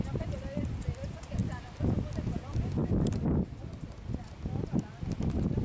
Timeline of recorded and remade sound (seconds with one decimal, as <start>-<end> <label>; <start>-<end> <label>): 0.0-5.6 recorded